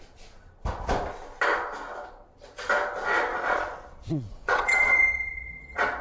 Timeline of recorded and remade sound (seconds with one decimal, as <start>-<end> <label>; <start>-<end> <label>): 0.0-3.3 recorded; 3.3-6.0 remade